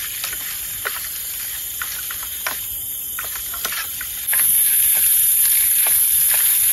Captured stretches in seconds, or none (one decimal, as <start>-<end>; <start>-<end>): 0.0-6.7